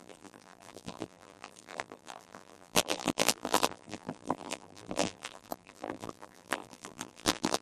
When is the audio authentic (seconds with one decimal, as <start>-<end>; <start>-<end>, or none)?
none